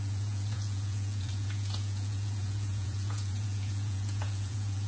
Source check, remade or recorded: remade